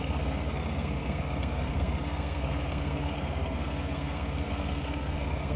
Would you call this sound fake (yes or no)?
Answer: yes